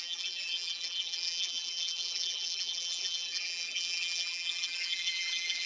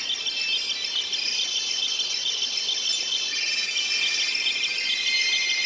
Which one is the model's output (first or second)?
first